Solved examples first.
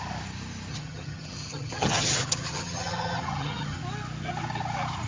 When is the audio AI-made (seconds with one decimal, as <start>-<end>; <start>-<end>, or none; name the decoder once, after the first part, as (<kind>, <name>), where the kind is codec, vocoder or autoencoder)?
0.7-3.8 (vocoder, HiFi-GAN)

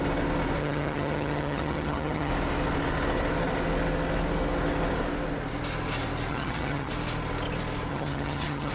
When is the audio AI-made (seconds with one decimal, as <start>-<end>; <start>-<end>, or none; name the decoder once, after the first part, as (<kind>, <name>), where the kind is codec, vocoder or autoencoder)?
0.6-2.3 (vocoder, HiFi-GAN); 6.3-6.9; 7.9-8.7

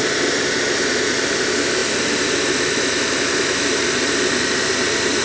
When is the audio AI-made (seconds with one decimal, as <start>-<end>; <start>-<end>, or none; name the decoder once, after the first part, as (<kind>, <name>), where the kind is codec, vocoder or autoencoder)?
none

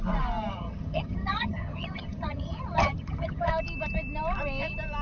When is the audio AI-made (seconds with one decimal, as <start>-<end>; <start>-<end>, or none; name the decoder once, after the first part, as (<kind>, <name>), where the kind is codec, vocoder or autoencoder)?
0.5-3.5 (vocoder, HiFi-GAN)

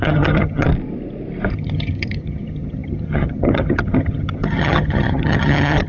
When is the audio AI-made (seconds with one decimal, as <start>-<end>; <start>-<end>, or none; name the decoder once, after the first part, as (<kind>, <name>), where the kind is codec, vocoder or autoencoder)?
0.0-0.7 (vocoder, HiFi-GAN); 1.5-5.9